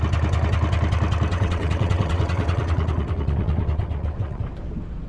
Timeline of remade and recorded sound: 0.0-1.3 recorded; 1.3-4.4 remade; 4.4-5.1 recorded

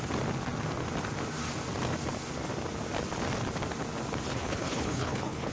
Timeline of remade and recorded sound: 0.0-4.3 recorded; 4.3-5.5 remade

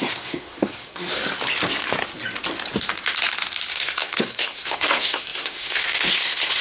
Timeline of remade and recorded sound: 0.0-1.2 remade; 1.2-3.7 recorded; 3.7-6.6 remade

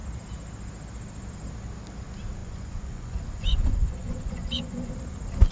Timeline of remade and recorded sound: 0.0-2.4 recorded; 2.4-4.9 remade; 4.9-5.5 recorded

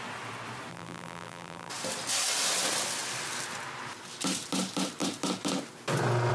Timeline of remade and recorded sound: 0.0-0.7 recorded; 0.7-1.7 remade; 1.7-6.3 recorded